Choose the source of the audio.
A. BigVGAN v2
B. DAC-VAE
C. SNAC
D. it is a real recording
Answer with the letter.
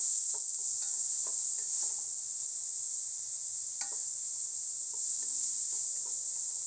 D